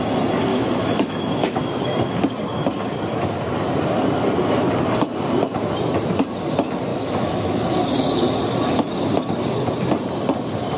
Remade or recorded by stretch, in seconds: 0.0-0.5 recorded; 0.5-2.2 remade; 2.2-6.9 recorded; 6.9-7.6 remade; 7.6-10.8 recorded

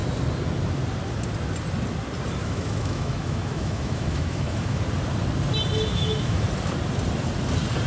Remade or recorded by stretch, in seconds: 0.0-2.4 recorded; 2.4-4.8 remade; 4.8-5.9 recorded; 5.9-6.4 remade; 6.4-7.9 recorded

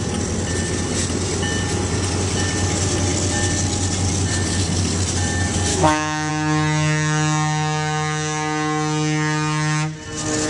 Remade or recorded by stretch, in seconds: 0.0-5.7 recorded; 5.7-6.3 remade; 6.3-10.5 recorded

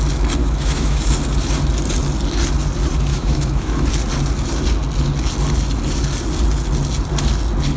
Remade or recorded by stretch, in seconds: 0.0-0.4 recorded; 0.4-1.0 remade; 1.0-3.1 recorded; 3.1-3.9 remade; 3.9-7.8 recorded

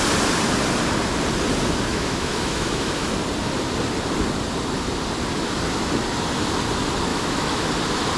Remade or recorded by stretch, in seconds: 0.0-1.9 recorded; 1.9-3.1 remade; 3.1-7.1 recorded; 7.1-7.7 remade; 7.7-8.2 recorded

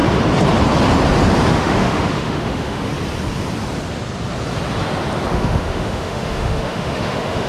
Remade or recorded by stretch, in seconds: 0.0-1.5 recorded; 1.5-2.9 remade; 2.9-5.3 recorded; 5.3-7.5 remade